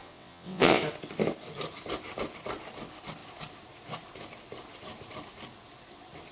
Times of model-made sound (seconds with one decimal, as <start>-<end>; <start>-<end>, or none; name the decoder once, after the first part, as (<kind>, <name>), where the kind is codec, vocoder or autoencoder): 0.0-0.8 (vocoder, WaveNeXt)